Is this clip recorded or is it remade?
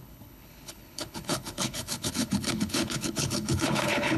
remade